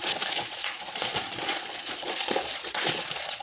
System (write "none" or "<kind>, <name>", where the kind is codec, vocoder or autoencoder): vocoder, Vocos